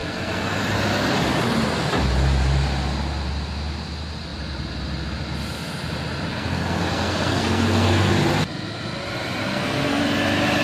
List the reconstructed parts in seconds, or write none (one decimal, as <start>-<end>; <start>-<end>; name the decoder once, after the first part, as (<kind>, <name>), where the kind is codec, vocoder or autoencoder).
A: 0.0-0.6 (codec, SNAC); 6.3-8.1; 9.4-10.0